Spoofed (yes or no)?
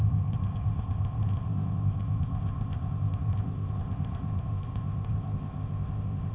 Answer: yes